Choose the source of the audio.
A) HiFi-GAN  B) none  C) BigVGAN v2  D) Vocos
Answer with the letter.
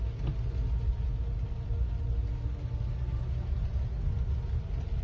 B